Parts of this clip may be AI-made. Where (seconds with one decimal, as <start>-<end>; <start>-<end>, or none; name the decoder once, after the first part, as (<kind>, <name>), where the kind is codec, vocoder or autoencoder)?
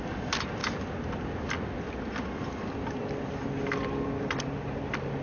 none